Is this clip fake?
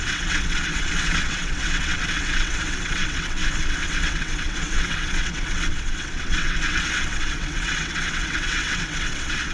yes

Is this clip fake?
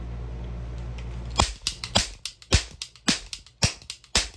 no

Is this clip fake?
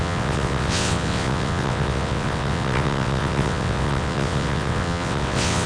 yes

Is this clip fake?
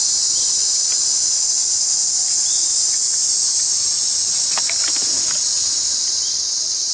no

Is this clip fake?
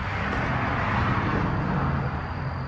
no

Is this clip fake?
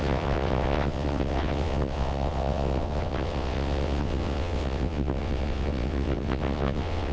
yes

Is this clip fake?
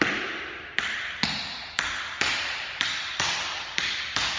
no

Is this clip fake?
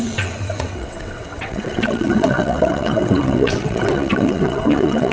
yes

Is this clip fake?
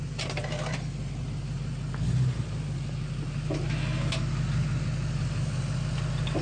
no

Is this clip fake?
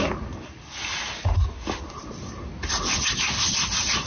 no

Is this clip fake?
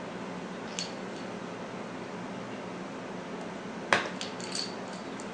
no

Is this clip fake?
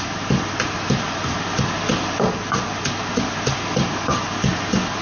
no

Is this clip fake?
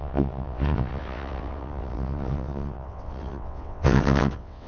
yes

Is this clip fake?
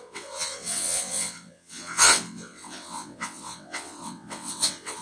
yes